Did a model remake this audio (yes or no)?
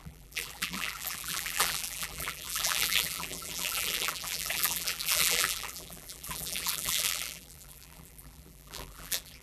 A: yes